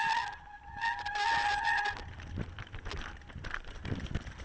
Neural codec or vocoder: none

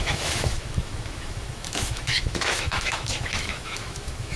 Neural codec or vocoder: autoencoder, DAC-VAE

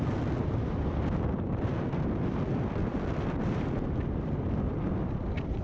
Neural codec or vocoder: none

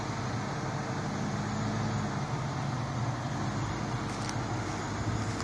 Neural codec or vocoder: none